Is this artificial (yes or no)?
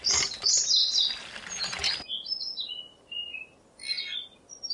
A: no